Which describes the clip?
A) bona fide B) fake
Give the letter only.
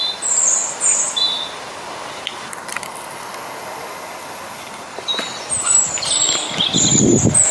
A